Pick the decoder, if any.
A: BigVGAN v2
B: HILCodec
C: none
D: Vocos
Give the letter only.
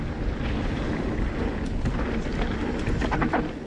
C